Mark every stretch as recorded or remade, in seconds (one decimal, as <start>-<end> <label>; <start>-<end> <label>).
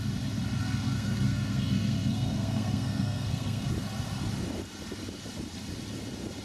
0.0-0.6 recorded; 0.6-3.7 remade; 3.7-6.4 recorded